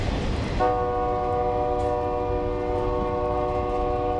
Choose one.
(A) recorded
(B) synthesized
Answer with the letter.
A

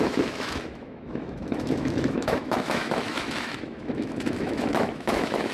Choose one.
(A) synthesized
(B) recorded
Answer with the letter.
A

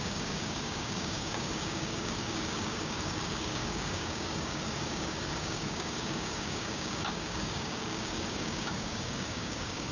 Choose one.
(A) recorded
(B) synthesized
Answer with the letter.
B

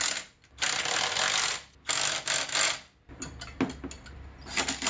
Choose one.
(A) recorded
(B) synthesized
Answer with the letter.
A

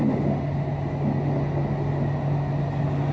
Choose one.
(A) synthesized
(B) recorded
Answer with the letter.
B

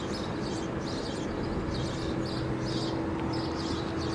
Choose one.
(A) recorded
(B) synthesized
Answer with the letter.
A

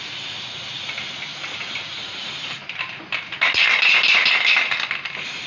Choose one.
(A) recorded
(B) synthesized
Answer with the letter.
A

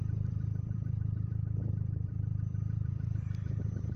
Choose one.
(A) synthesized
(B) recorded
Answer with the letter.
A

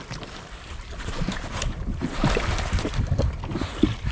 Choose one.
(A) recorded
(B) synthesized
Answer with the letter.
A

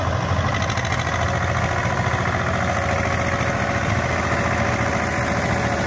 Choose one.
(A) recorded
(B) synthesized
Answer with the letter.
A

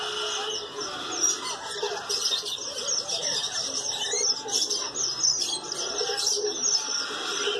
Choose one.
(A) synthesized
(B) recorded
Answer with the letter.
B